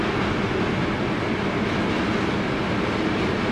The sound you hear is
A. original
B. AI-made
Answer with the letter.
A